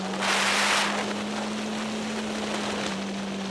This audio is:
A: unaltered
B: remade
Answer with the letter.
A